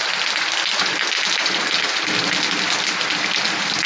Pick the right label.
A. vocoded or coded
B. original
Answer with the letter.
B